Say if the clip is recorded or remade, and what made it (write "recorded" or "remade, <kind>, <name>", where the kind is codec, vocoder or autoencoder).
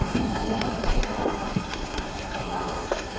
remade, codec, SNAC